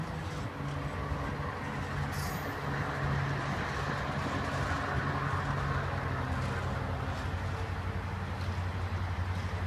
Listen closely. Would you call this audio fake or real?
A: real